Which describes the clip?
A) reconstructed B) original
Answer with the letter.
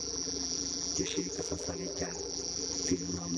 A